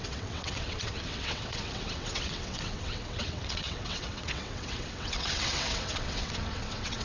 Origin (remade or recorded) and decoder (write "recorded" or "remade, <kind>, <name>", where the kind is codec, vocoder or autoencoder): remade, vocoder, WaveNeXt